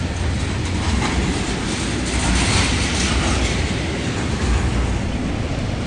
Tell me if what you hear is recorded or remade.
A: recorded